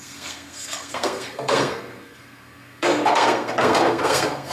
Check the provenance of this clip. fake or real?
fake